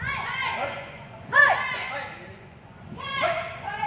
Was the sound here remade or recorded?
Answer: remade